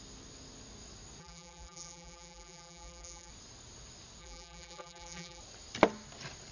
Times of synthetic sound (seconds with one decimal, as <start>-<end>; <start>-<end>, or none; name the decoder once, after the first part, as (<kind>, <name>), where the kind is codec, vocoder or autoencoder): 1.2-3.3 (vocoder, BigVGAN v2); 4.2-5.4